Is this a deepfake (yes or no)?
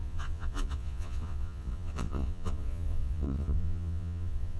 yes